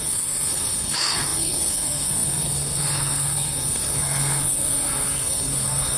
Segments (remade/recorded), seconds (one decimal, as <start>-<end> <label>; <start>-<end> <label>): 0.0-6.0 remade